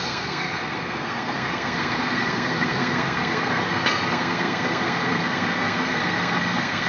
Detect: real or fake fake